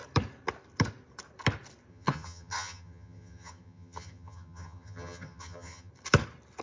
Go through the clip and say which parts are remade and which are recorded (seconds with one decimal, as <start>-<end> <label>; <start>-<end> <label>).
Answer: 0.0-1.9 recorded; 1.9-5.9 remade; 5.9-6.6 recorded